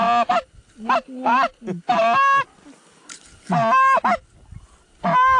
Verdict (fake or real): real